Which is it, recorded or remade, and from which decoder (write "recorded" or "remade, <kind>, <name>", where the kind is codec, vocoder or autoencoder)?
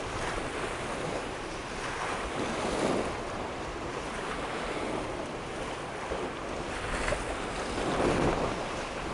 recorded